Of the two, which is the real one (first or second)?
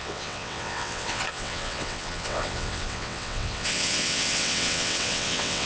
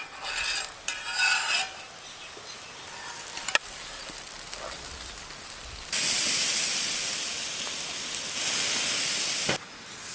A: second